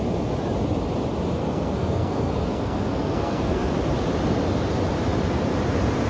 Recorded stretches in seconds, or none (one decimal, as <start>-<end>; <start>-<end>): 0.0-1.4; 3.7-6.1